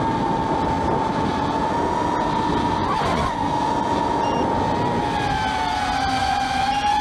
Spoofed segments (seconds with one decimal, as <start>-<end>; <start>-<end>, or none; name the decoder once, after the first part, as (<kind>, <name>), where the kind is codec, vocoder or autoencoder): 2.8-3.5 (vocoder, Vocos); 6.2-7.0